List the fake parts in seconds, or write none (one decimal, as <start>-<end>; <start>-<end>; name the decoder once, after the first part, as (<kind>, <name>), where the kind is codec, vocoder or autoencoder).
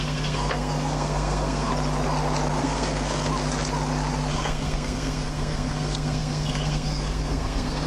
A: 0.0-1.7 (codec, SNAC); 2.6-3.3; 4.3-7.9